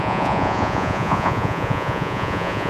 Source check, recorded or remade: remade